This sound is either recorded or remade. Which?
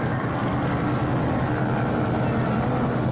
recorded